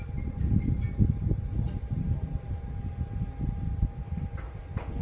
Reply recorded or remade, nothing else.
recorded